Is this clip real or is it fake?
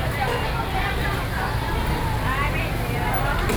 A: real